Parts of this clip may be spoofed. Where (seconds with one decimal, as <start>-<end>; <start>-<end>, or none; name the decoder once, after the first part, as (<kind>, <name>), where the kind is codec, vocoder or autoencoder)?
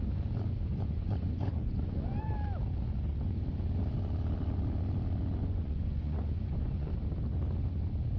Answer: 0.7-2.3 (vocoder, Vocos); 5.4-6.9